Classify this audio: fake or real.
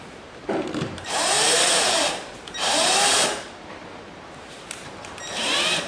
fake